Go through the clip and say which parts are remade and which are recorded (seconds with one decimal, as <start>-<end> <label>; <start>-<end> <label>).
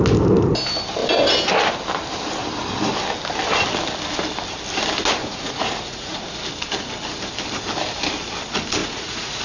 0.0-5.2 recorded; 5.2-6.2 remade; 6.2-8.8 recorded; 8.8-9.4 remade